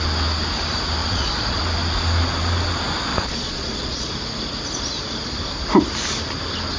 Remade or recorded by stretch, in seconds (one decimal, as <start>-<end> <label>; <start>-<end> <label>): 0.0-1.0 recorded; 1.0-1.6 remade; 1.6-3.1 recorded; 3.1-4.1 remade; 4.1-6.8 recorded